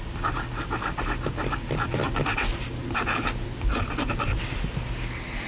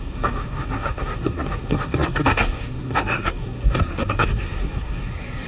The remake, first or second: second